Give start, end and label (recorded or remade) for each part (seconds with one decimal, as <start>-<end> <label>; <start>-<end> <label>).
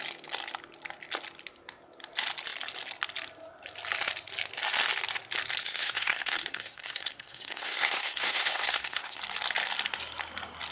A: 0.0-5.6 recorded; 5.6-9.2 remade; 9.2-10.7 recorded